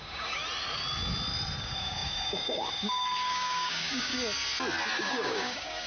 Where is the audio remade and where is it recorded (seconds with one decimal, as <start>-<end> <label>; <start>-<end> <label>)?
0.0-0.4 remade; 0.4-1.6 recorded; 1.6-4.1 remade; 4.1-5.0 recorded; 5.0-5.9 remade